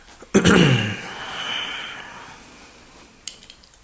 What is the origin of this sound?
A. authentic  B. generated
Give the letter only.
A